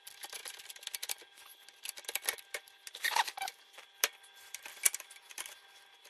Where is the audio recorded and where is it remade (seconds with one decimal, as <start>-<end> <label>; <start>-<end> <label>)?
0.0-6.1 recorded